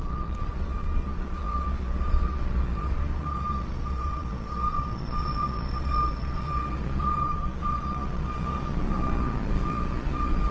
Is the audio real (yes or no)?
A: no